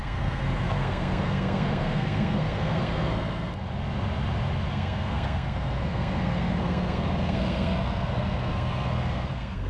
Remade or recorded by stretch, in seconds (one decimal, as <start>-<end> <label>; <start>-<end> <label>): 0.0-3.6 remade; 3.6-4.7 recorded; 4.7-9.7 remade

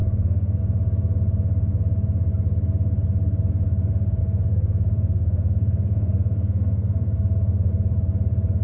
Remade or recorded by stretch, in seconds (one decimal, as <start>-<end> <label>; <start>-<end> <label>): 0.0-0.6 remade; 0.6-4.2 recorded; 4.2-7.7 remade; 7.7-8.6 recorded